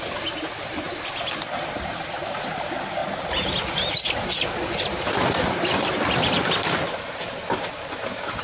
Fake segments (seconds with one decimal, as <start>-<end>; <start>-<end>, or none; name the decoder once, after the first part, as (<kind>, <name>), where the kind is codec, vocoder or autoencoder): none